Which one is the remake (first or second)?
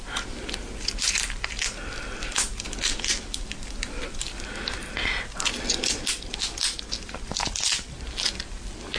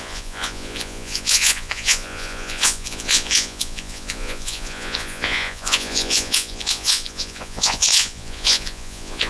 second